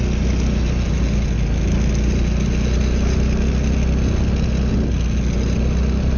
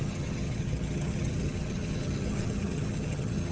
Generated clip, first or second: second